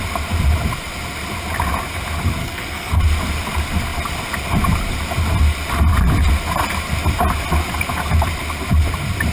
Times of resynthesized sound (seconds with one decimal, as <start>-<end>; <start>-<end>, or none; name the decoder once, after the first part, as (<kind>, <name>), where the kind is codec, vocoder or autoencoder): 2.4-2.9 (codec, SNAC)